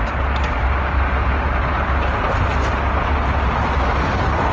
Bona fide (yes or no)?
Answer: yes